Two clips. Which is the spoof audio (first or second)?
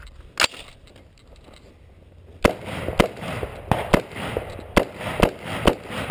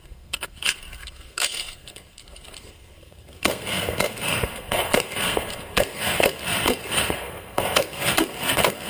second